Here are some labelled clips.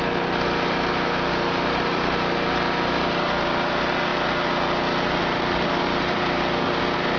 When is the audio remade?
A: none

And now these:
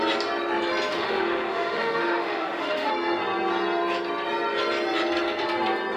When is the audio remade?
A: 0.9-2.9 (autoencoder, DAC-VAE)

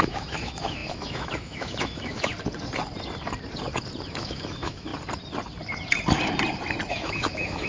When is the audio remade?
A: 0.0-2.3 (autoencoder, DAC-VAE); 4.2-4.9; 6.9-7.7

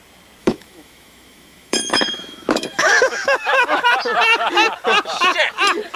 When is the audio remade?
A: 0.4-3.9 (autoencoder, DAC-VAE)

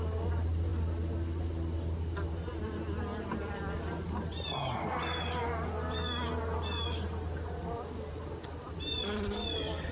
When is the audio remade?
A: none

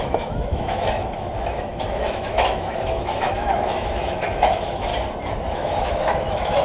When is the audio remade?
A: 0.0-4.9 (autoencoder, DAC-VAE); 5.5-6.6

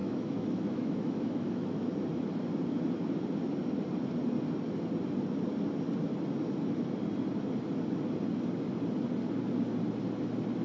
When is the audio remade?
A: 0.0-1.9 (autoencoder, DAC-VAE)

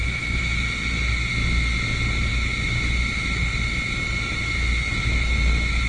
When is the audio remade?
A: 0.0-1.3 (autoencoder, DAC-VAE); 2.3-5.9